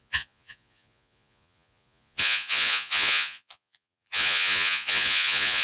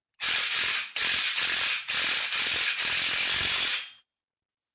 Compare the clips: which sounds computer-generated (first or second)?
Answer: first